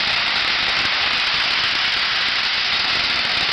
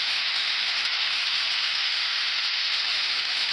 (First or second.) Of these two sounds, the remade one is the second